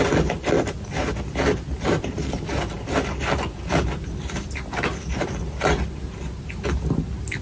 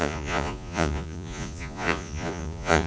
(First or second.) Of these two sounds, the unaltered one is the first